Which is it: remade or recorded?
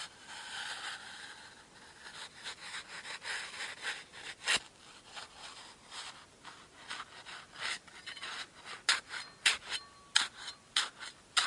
recorded